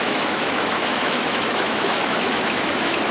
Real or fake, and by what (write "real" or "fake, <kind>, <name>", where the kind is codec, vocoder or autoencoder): fake, autoencoder, DAC-VAE